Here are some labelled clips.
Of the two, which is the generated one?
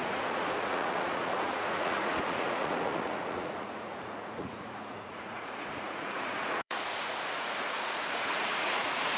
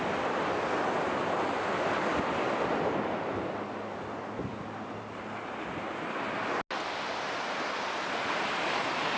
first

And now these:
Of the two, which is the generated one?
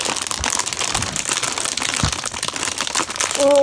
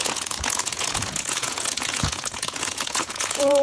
second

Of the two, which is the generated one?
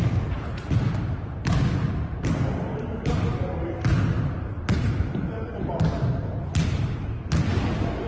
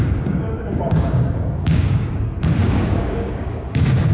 second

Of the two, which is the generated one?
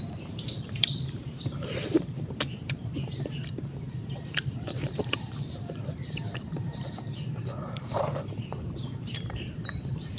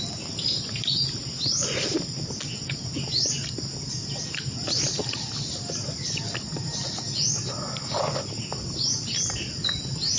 first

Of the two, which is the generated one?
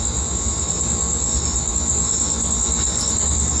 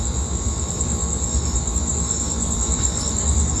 second